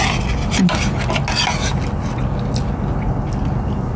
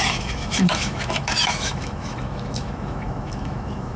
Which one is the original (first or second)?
first